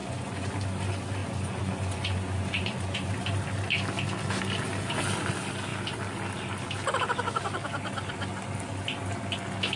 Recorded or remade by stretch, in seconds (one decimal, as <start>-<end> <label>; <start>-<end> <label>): 0.0-0.5 remade; 0.5-1.2 recorded; 1.2-3.1 remade; 3.1-9.8 recorded